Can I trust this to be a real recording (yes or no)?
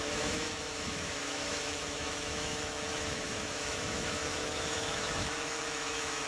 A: no